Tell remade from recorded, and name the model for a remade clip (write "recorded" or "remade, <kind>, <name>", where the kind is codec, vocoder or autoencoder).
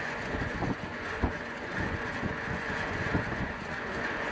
remade, vocoder, Vocos